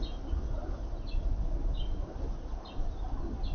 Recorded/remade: recorded